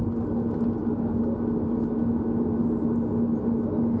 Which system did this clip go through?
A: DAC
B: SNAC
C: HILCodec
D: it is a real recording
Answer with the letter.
D